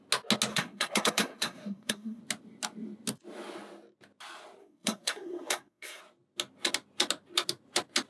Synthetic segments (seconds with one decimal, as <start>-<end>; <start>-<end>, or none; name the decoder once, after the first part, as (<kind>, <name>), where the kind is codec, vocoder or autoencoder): 0.5-2.2 (codec, SNAC); 4.6-6.0